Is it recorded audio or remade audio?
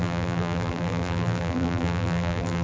remade